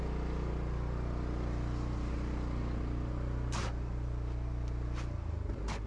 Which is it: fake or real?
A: real